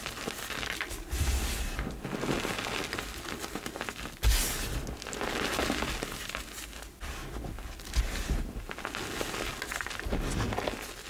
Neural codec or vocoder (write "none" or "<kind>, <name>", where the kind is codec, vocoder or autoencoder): none